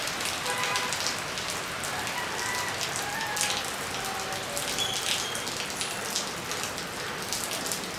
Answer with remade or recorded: recorded